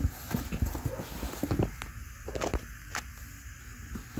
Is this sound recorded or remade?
recorded